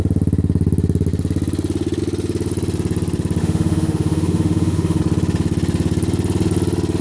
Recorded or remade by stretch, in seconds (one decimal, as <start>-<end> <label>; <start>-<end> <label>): 0.0-3.4 recorded; 3.4-5.0 remade; 5.0-7.0 recorded